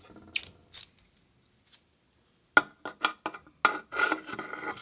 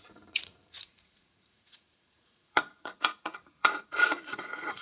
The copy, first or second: second